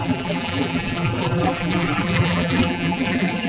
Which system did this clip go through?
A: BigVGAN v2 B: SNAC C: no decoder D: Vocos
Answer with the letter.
A